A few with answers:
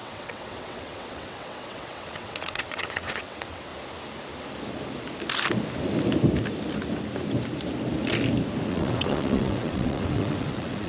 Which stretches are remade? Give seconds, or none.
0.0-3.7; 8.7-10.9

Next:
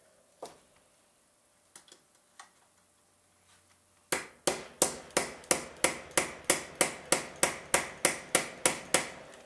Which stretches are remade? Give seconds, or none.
none

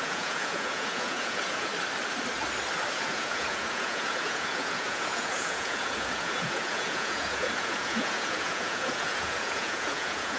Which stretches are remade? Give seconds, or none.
0.0-1.7; 2.9-10.4

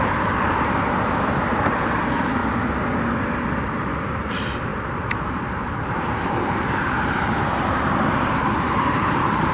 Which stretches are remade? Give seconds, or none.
0.0-2.4; 3.5-9.5

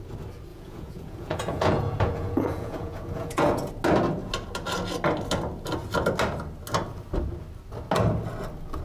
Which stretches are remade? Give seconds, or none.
0.5-3.7

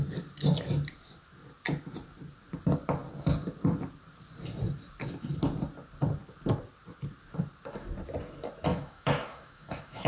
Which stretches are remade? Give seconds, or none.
8.7-10.1

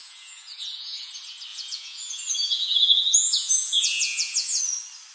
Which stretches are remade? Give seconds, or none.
0.0-1.1; 1.5-4.6